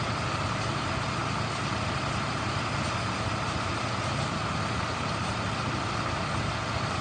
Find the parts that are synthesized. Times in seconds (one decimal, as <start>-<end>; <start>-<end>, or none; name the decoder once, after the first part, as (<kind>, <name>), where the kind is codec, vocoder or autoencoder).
none